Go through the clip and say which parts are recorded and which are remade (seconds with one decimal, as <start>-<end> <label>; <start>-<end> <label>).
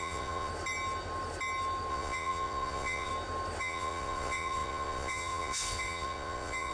0.0-0.5 remade; 0.5-1.9 recorded; 1.9-3.1 remade; 3.1-3.6 recorded; 3.6-6.7 remade